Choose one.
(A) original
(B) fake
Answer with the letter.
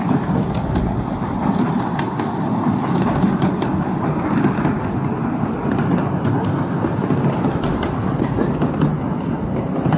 A